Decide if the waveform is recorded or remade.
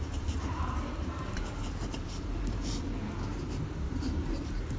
remade